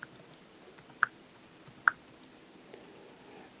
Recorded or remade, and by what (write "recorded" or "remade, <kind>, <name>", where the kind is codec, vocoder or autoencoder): recorded